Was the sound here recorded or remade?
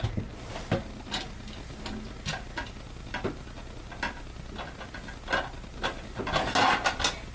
recorded